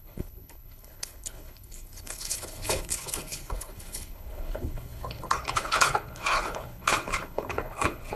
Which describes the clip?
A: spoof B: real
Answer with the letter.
A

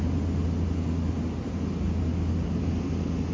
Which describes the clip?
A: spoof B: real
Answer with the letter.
B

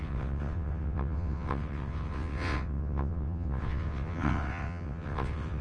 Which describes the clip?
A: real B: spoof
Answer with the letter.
B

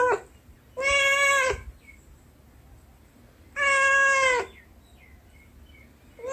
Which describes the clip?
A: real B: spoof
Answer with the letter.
A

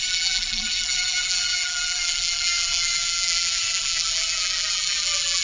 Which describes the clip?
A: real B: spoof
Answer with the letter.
B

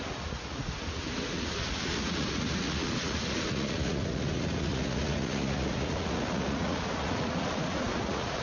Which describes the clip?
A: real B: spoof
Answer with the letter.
B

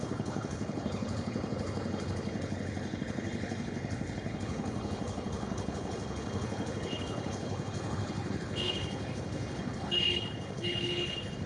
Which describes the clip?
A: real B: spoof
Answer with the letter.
B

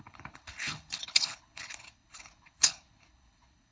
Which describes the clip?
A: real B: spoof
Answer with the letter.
B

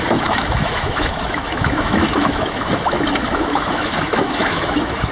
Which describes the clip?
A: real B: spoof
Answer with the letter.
B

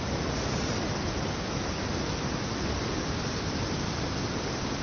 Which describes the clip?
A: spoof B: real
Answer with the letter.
B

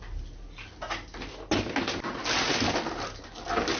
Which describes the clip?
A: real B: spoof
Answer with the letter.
A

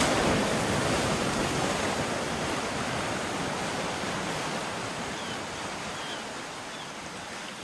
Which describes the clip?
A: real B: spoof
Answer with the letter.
B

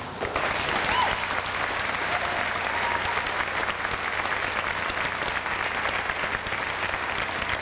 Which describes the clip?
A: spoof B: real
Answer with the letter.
B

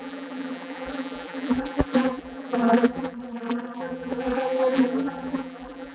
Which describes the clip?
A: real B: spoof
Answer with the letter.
B